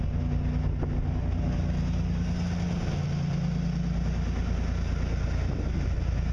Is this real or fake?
real